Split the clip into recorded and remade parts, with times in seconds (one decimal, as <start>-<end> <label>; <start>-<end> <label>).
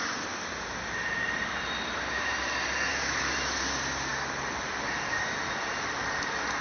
0.0-2.9 recorded; 2.9-3.6 remade; 3.6-6.6 recorded